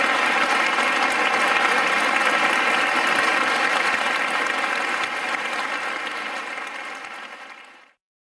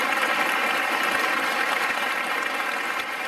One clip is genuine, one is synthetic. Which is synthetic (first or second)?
second